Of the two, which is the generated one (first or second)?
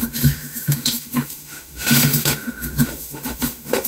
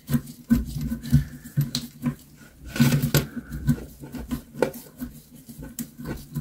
first